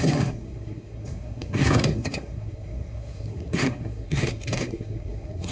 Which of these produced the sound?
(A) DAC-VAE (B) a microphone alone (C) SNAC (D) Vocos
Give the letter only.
C